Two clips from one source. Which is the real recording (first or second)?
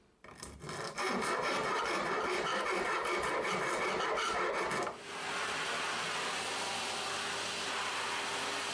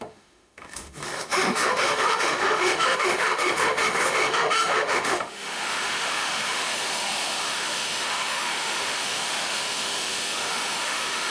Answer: first